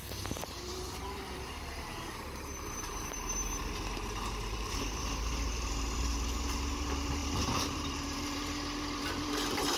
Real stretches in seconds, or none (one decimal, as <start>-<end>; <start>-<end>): none